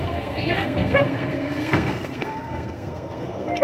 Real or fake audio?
fake